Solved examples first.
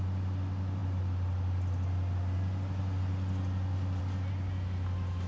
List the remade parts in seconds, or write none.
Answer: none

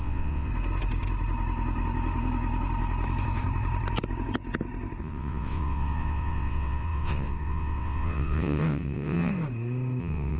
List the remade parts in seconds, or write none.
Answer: 0.0-0.5 (vocoder, WaveNeXt); 5.0-9.3; 10.0-10.4

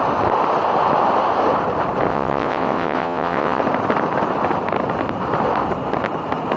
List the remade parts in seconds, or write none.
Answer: 2.1-3.6 (vocoder, WaveNeXt)

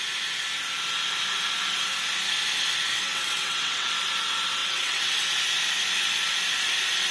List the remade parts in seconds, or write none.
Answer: 2.9-3.9 (vocoder, WaveNeXt); 4.6-5.3

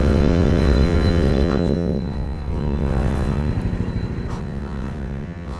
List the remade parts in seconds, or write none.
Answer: 0.0-3.5 (vocoder, WaveNeXt); 4.4-5.6

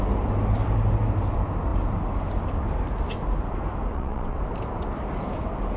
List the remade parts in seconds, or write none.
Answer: 3.9-4.4 (vocoder, WaveNeXt)

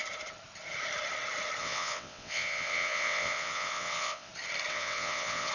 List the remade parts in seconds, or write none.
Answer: 1.6-4.3 (vocoder, WaveNeXt); 4.7-5.5